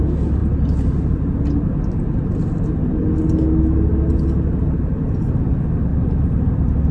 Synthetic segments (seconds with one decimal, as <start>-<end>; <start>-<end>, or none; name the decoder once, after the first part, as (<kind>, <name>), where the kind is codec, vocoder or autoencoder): 5.9-6.5 (vocoder, BigVGAN v2)